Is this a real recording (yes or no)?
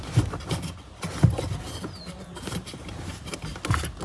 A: yes